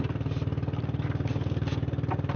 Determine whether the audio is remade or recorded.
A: recorded